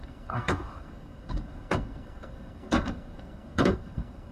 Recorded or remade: remade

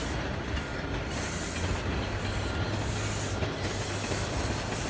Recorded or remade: recorded